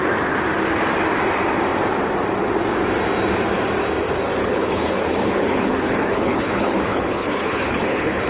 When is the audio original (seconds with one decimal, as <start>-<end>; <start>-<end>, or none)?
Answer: 0.0-4.4